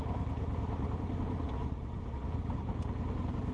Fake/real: real